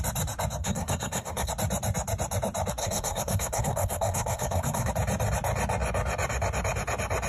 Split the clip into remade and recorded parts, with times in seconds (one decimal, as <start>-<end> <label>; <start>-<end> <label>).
0.0-0.6 recorded; 0.6-1.5 remade; 1.5-2.8 recorded; 2.8-4.9 remade; 4.9-7.3 recorded